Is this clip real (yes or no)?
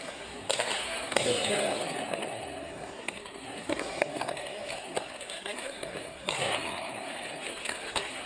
no